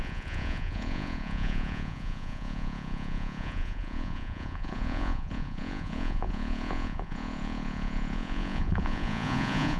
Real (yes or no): no